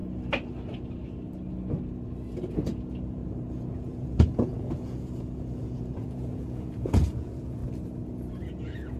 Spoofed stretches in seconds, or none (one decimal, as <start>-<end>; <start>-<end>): 2.5-3.2; 3.7-7.6; 8.3-9.0